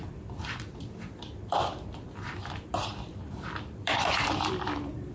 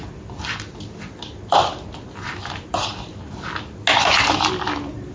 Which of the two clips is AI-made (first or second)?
first